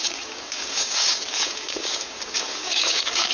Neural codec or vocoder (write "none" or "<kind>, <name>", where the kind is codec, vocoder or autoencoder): codec, DAC